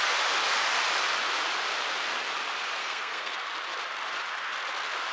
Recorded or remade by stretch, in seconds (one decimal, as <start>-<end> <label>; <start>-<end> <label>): 0.0-2.8 recorded; 2.8-3.3 remade; 3.3-5.1 recorded